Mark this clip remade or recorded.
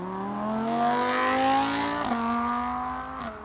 recorded